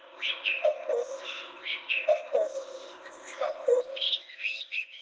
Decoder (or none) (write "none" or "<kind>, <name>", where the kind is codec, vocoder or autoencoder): codec, ZipCodec